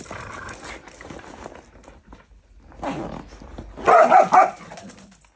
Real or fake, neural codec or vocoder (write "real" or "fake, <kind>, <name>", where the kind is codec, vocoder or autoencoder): real